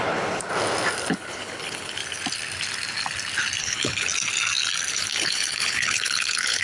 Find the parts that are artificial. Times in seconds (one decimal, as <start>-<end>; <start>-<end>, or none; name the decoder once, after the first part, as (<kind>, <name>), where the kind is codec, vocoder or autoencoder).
0.0-0.5 (codec, HILCodec); 1.1-2.0; 3.6-4.1; 4.9-6.6